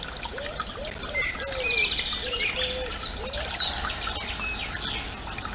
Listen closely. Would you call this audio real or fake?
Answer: real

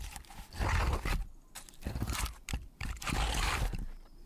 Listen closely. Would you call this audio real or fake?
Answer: real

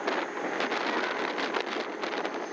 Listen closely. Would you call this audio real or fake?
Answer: real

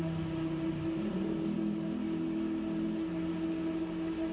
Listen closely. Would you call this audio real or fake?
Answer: real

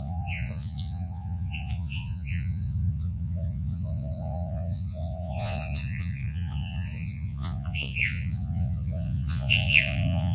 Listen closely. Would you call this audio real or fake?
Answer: fake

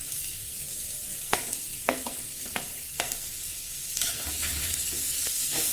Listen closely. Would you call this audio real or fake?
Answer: fake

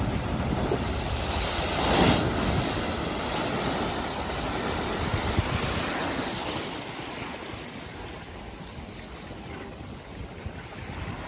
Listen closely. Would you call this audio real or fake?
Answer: real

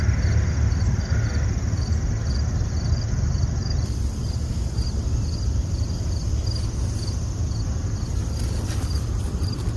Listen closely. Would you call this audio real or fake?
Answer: real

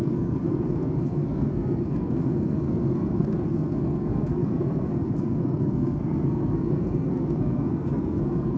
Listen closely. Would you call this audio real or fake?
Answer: fake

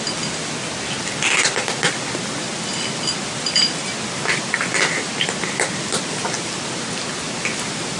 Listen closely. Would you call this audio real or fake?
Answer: real